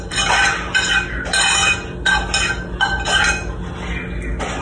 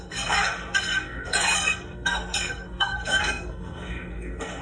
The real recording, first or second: first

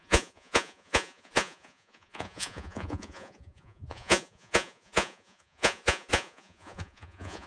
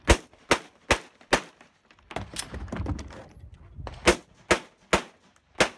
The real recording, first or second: second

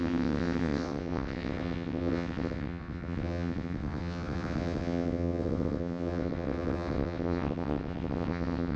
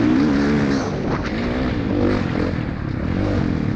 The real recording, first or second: second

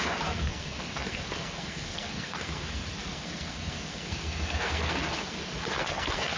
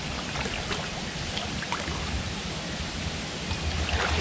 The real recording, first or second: second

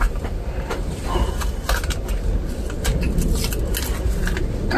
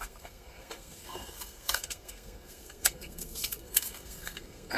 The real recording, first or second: first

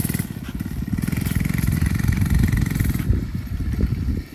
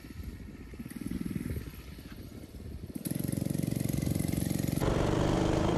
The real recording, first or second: first